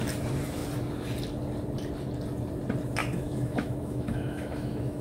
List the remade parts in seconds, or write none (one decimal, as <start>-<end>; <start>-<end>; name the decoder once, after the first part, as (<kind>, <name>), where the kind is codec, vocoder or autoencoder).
3.0-5.0 (autoencoder, DAC-VAE)